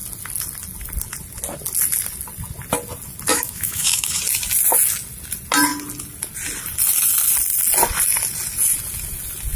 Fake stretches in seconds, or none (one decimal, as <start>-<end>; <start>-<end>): 3.3-4.2